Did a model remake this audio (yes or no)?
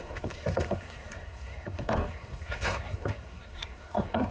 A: yes